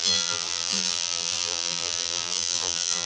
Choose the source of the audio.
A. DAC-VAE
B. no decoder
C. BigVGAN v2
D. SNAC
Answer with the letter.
C